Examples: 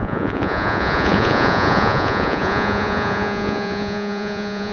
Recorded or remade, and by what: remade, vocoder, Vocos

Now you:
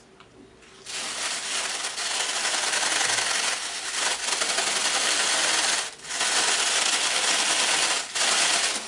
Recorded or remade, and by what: recorded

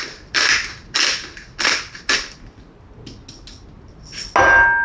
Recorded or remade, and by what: recorded